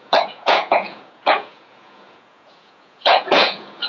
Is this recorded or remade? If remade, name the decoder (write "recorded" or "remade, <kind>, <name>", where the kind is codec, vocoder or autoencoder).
remade, vocoder, Vocos